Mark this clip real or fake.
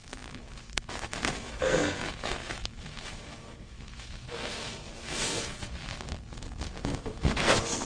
fake